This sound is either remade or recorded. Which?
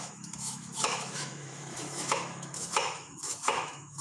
remade